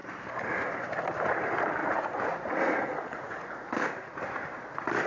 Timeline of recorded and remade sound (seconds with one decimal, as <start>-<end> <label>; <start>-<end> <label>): 0.0-1.8 recorded; 1.8-3.7 remade; 3.7-5.1 recorded